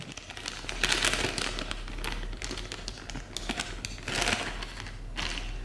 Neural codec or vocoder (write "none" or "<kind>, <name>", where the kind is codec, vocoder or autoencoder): none